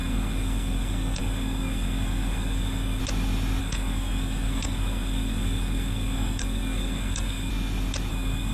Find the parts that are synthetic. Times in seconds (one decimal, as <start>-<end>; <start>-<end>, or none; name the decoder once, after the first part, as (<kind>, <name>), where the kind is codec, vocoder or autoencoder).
0.0-3.0 (codec, SNAC); 3.6-7.5; 8.1-8.5